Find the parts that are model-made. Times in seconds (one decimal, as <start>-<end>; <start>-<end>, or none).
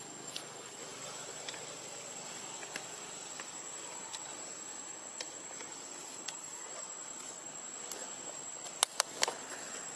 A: none